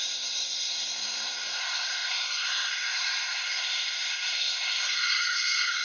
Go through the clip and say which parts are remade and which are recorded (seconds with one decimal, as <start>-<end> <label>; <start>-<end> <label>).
0.0-5.8 remade